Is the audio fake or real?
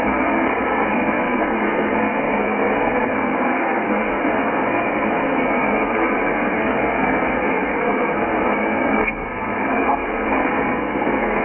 fake